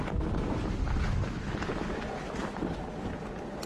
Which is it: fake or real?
real